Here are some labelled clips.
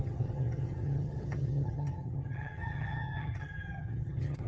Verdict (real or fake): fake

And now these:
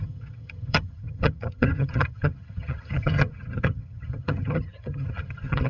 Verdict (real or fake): fake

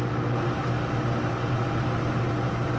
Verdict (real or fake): real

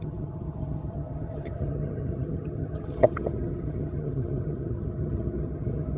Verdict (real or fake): fake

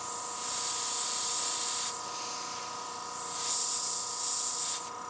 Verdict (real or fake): real